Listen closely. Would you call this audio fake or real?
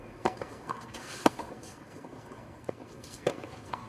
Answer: fake